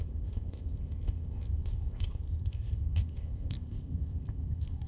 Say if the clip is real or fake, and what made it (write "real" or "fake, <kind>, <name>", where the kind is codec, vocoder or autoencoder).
fake, codec, ZipCodec